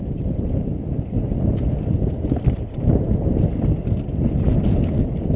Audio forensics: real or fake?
real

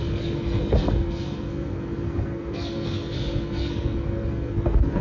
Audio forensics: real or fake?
fake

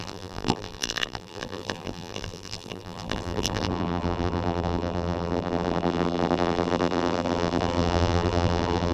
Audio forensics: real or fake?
fake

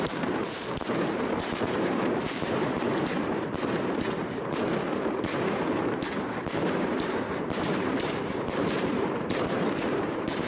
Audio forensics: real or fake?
fake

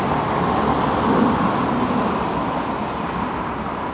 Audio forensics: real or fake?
real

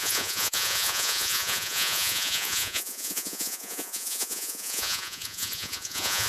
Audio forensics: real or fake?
fake